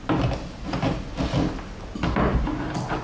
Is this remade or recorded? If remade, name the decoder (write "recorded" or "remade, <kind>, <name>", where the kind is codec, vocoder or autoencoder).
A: recorded